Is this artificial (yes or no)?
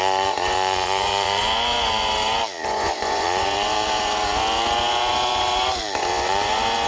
yes